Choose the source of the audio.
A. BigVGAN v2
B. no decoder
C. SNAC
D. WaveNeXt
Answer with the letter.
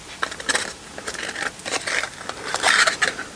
B